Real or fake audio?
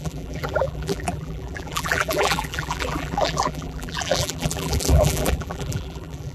fake